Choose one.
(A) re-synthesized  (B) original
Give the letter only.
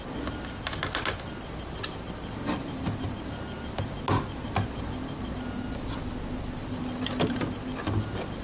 B